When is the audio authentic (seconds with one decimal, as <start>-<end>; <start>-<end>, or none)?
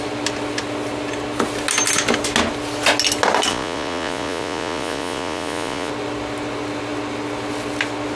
0.0-3.5; 5.9-8.2